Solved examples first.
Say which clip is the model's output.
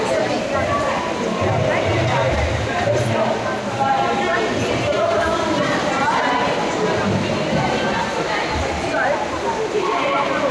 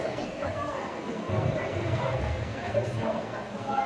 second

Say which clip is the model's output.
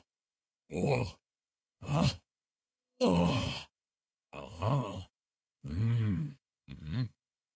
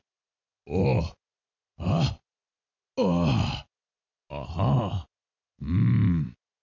first